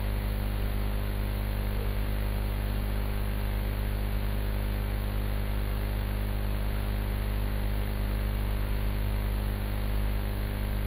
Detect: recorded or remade recorded